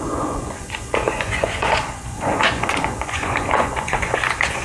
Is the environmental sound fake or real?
fake